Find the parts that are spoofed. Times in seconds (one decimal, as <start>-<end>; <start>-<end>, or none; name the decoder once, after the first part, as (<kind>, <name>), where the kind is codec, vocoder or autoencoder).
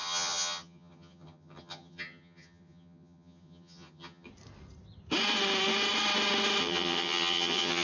0.0-4.3 (vocoder, HiFi-GAN); 6.6-7.8